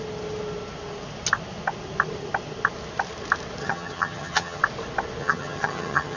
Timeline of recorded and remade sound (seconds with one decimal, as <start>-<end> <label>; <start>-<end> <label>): 0.0-3.6 recorded; 3.6-4.6 remade; 4.6-5.2 recorded; 5.2-6.2 remade